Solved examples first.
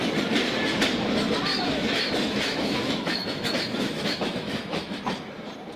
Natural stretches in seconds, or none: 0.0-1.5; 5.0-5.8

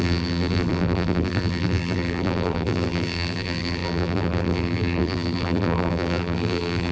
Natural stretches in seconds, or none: none

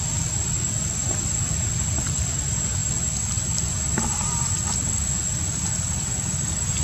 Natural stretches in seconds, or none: 0.0-6.8

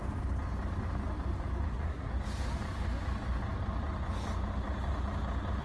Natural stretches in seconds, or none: 0.0-1.7; 2.1-5.6